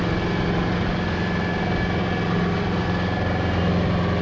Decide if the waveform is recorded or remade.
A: recorded